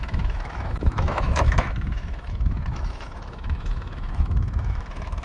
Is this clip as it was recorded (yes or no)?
no